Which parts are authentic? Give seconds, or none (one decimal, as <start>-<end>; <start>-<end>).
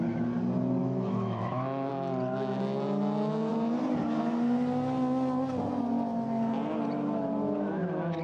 0.0-0.8; 1.9-8.2